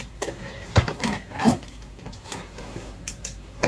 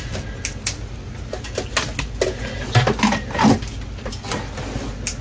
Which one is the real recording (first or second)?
second